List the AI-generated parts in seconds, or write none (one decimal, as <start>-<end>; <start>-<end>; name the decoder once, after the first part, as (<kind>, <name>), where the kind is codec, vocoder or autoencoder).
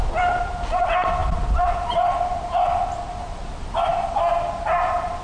none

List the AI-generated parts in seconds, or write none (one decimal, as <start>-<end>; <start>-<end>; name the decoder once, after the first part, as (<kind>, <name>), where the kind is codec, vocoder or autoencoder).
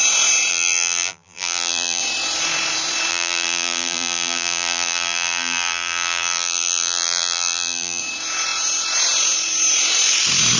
0.5-2.0 (vocoder, BigVGAN v2); 3.1-8.0